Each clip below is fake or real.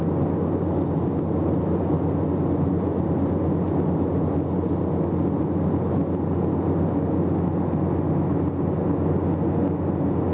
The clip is real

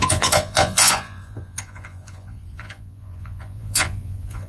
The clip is fake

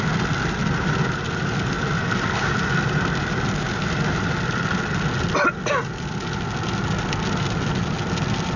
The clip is real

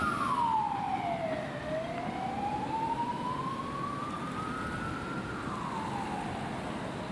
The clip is real